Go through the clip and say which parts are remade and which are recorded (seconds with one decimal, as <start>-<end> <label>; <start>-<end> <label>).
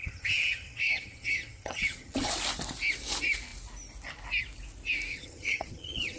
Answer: 0.0-2.3 remade; 2.3-5.1 recorded; 5.1-6.2 remade